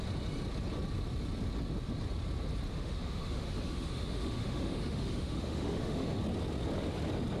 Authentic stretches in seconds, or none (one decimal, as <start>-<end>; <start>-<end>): 0.0-2.7; 6.2-7.4